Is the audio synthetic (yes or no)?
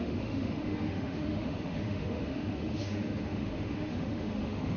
yes